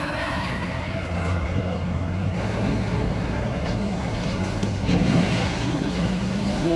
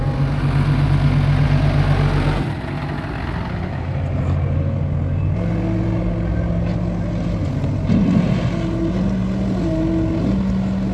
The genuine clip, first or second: second